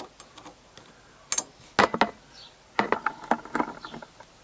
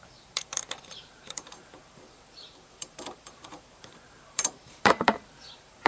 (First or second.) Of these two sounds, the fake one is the second